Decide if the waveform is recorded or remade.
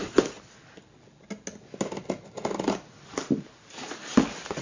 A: recorded